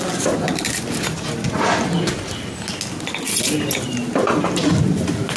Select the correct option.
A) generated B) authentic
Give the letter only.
B